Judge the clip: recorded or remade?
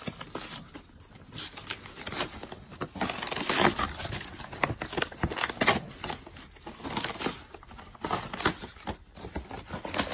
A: recorded